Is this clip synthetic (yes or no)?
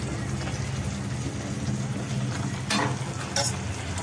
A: no